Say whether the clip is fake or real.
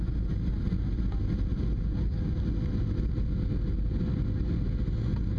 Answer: real